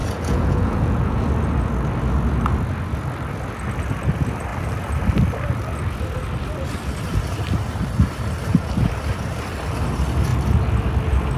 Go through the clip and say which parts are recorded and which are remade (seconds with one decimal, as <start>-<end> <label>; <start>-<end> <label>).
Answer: 0.0-1.2 remade; 1.2-11.4 recorded